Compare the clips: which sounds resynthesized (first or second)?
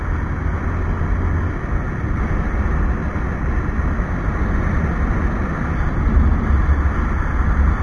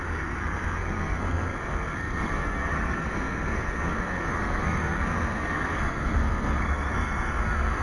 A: second